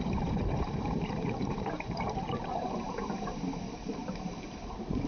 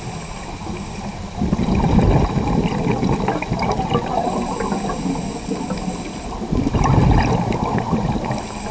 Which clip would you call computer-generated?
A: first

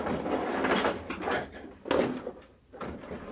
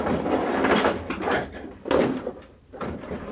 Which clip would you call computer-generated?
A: second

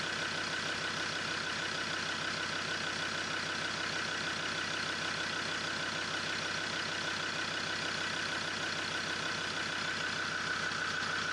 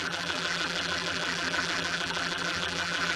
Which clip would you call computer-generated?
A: second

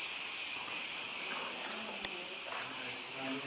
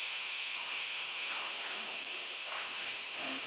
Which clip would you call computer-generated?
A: second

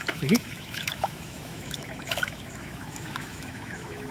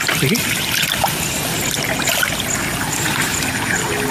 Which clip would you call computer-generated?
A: first